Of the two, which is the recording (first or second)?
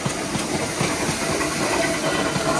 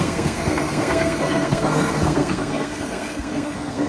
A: first